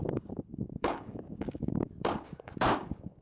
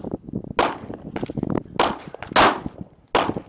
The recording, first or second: second